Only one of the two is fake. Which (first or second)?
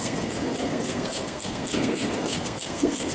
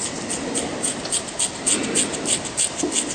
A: first